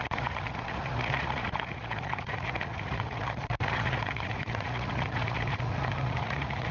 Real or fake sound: fake